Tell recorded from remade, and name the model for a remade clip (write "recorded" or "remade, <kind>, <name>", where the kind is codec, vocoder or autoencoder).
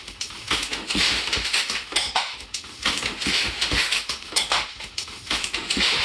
remade, autoencoder, DAC-VAE